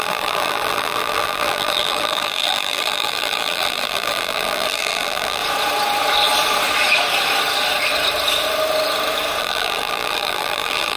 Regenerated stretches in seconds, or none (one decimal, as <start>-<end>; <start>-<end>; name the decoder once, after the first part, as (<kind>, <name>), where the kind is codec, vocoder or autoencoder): 0.0-5.4 (vocoder, BigVGAN v2); 9.4-11.0